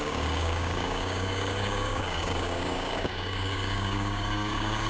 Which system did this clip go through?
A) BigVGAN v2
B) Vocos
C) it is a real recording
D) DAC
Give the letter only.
D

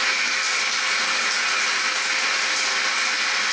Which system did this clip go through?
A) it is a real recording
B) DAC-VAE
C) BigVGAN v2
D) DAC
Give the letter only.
A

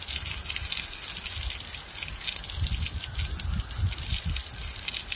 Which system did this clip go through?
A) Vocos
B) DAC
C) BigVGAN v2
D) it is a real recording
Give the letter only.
D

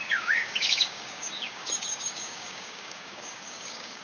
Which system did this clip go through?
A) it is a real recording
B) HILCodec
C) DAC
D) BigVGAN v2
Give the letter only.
C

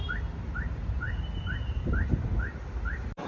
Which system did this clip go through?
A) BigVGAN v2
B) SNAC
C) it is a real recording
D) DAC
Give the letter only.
C